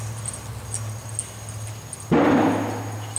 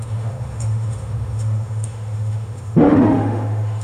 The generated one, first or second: second